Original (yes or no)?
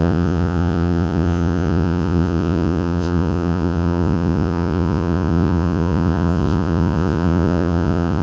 no